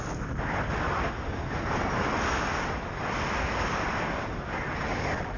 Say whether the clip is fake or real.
real